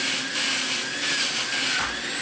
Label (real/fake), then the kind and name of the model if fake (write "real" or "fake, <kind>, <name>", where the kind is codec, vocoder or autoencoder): real